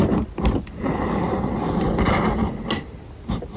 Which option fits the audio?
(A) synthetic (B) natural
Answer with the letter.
B